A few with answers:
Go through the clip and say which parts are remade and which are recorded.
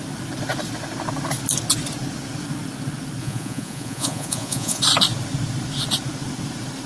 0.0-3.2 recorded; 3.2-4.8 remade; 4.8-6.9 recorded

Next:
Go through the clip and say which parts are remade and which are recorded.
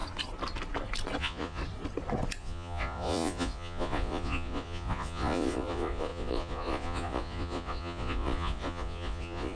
0.0-1.2 recorded; 1.2-1.6 remade; 1.6-2.4 recorded; 2.4-9.6 remade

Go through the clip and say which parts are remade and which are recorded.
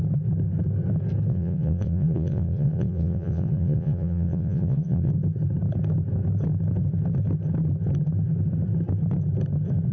0.0-1.3 recorded; 1.3-5.1 remade; 5.1-9.9 recorded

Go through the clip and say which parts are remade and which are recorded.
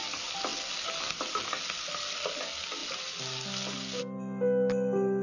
0.0-5.2 recorded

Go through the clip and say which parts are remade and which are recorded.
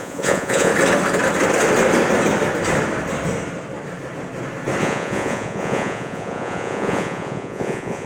0.0-0.7 remade; 0.7-4.8 recorded; 4.8-8.1 remade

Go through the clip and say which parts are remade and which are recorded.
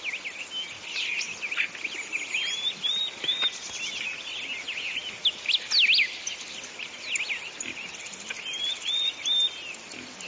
0.0-10.3 recorded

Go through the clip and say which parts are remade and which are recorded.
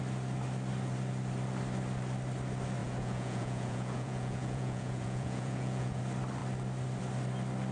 0.0-2.8 recorded; 2.8-6.0 remade; 6.0-7.7 recorded